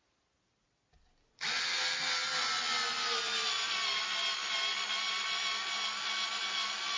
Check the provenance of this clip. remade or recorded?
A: recorded